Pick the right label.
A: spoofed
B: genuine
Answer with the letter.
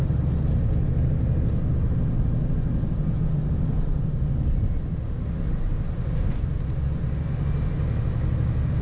B